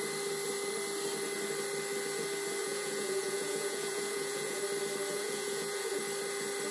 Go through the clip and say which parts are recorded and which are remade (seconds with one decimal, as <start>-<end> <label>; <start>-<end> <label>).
0.0-2.6 recorded; 2.6-4.6 remade; 4.6-5.1 recorded; 5.1-6.0 remade; 6.0-6.7 recorded